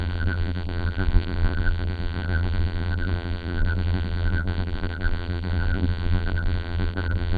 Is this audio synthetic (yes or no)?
yes